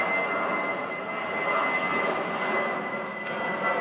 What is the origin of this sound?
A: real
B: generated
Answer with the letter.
A